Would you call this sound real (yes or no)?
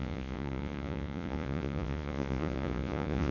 no